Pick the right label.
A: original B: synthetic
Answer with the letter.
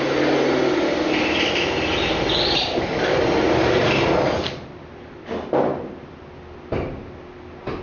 A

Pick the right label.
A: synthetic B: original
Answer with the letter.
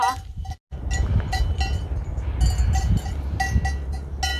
B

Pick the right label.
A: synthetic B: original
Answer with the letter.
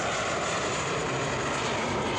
B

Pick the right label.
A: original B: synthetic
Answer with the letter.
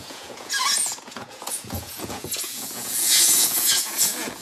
B